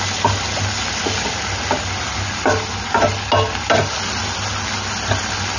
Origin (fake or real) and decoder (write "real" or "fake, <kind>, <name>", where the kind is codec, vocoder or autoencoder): real